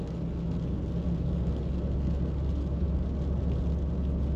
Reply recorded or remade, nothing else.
recorded